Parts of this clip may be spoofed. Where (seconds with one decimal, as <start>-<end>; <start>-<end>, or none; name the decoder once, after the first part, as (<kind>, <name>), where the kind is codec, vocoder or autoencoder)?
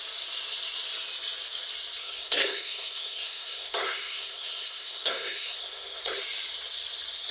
2.0-6.2 (codec, SNAC)